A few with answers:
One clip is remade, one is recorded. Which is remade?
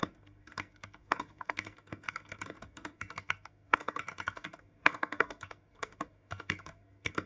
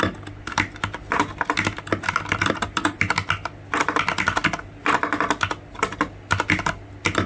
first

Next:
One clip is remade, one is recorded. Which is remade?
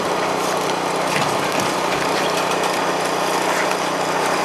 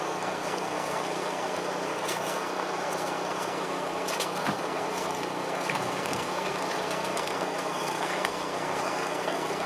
second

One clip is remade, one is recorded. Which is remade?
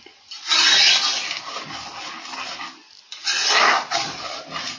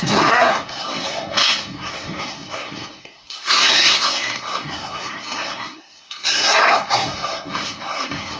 second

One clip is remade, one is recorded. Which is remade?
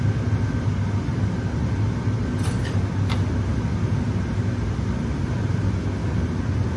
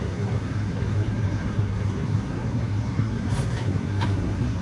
second